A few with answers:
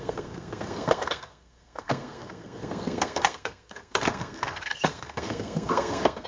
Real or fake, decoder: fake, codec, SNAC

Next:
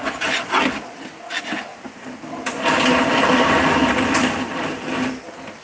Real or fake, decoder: real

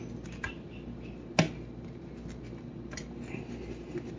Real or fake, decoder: real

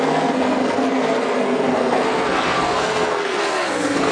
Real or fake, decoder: fake, codec, SNAC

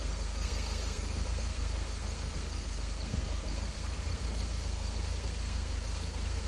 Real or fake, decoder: fake, codec, SNAC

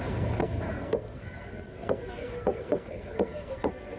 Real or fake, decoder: fake, codec, SNAC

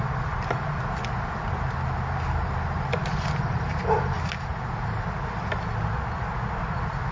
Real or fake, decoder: real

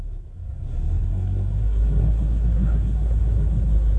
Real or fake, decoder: fake, codec, SNAC